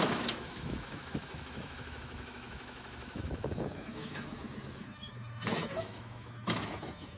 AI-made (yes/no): yes